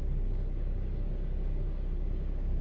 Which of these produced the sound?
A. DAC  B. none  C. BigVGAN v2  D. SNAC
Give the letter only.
A